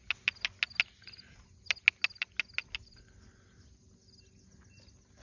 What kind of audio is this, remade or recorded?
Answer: recorded